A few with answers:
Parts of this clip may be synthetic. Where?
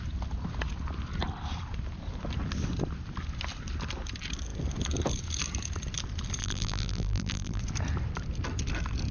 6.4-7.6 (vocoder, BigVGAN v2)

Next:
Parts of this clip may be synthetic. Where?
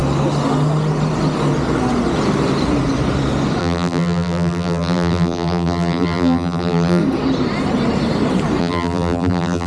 3.6-7.0 (vocoder, BigVGAN v2); 8.6-9.7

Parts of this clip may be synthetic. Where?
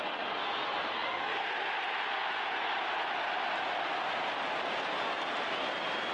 none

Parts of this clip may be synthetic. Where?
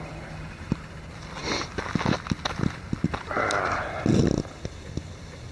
none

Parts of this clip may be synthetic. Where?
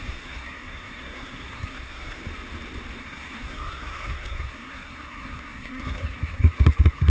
0.0-2.2 (codec, SNAC); 3.0-7.1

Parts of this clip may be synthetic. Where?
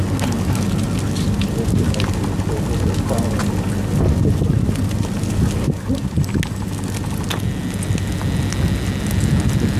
none